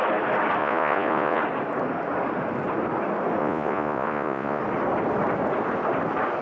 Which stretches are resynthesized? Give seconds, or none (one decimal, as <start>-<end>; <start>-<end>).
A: 0.6-1.4; 3.4-4.6